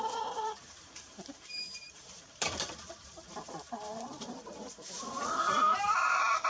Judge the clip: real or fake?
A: fake